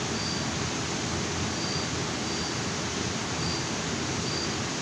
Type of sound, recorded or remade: recorded